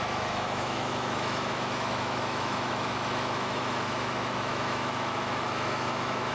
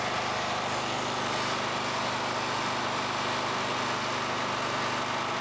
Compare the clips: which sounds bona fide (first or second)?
second